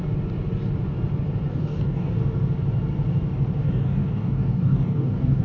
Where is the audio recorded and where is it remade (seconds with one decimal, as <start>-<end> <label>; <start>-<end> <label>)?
0.0-1.5 recorded; 1.5-2.1 remade; 2.1-3.6 recorded; 3.6-5.4 remade